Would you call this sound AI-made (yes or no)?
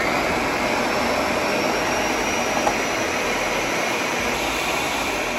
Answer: no